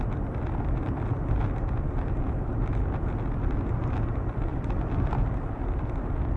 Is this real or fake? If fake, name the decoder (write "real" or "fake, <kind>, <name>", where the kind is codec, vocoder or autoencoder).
fake, vocoder, BigVGAN v2